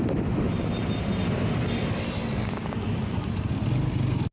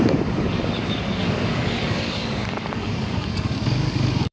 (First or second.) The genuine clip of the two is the first